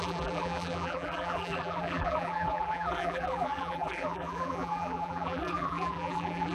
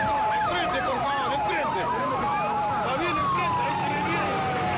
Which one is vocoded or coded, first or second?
first